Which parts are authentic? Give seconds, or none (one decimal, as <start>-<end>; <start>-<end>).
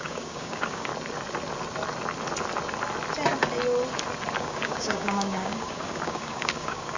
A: 0.9-4.4